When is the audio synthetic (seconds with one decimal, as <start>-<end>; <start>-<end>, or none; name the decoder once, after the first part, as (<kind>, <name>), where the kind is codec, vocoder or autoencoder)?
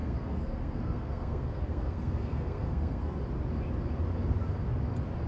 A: 0.0-3.2 (codec, SNAC)